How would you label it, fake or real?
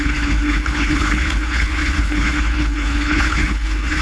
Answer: fake